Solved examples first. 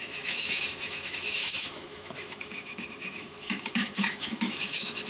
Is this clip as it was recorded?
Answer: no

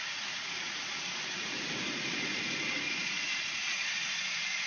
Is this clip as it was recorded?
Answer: no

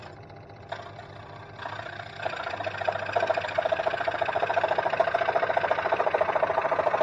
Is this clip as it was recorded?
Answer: yes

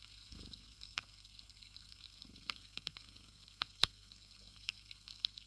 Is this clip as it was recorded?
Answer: no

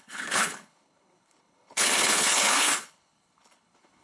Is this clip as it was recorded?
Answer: no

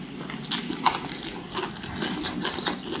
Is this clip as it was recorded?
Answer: yes